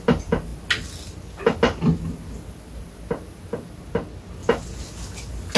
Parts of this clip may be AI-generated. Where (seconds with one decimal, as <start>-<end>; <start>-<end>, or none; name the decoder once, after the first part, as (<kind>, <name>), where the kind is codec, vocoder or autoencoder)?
none